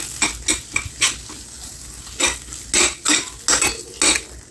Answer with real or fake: real